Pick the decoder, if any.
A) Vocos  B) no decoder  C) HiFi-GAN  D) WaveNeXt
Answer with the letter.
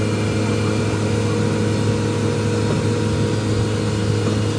B